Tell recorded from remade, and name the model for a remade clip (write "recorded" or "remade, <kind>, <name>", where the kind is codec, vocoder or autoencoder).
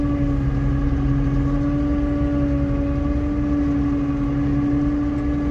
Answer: recorded